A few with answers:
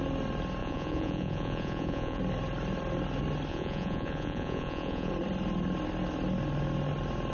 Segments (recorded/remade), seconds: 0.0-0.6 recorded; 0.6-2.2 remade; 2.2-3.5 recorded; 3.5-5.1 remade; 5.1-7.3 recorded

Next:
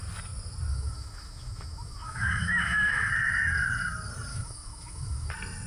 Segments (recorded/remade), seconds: 0.0-0.7 recorded; 0.7-3.1 remade; 3.1-4.3 recorded; 4.3-5.3 remade; 5.3-5.7 recorded

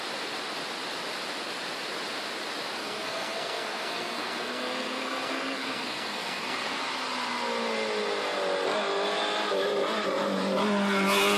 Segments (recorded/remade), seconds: 0.0-2.8 recorded; 2.8-6.8 remade; 6.8-11.4 recorded

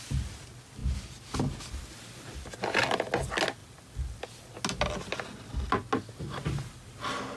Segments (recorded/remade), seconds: 0.0-7.4 recorded